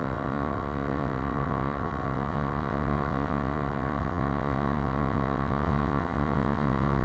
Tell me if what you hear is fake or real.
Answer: fake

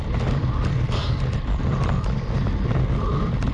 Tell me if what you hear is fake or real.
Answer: real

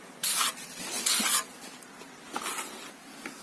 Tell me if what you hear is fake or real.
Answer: fake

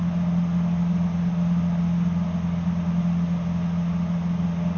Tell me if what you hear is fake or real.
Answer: real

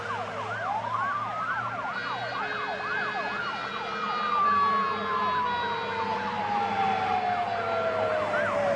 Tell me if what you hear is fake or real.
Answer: real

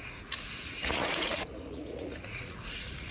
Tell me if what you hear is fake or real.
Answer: fake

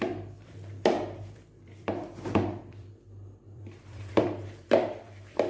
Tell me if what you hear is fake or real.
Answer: fake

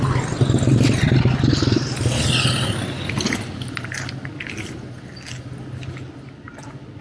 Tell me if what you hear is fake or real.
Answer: real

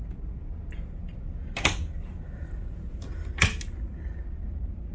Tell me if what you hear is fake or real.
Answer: real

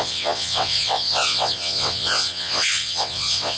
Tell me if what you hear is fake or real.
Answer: fake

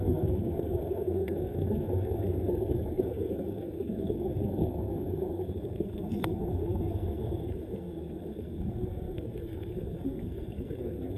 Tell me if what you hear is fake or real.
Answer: fake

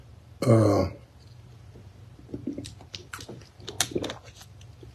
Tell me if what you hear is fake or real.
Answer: real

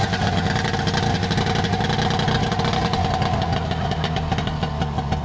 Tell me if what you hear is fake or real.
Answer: real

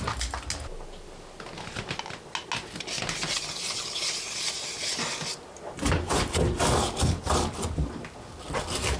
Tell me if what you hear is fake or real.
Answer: real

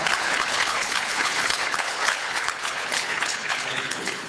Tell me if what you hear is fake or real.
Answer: fake